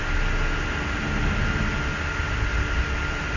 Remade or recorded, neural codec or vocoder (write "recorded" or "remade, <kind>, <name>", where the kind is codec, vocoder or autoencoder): recorded